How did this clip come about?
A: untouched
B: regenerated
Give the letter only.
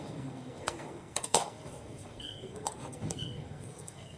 B